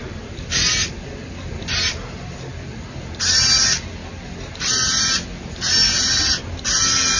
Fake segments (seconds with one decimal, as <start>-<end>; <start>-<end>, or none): none